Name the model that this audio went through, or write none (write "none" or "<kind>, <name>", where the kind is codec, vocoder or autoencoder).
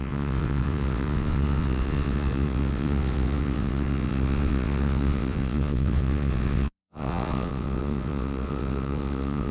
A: vocoder, WaveNeXt